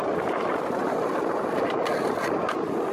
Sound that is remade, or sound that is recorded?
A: recorded